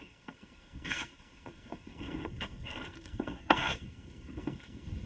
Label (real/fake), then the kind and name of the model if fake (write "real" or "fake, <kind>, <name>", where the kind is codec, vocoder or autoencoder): fake, codec, SNAC